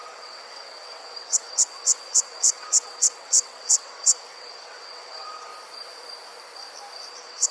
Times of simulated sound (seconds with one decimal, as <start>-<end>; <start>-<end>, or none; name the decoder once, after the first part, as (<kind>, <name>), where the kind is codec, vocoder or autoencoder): 0.0-5.5 (vocoder, WaveNeXt); 7.1-7.5